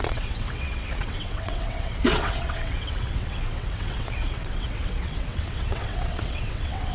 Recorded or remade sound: remade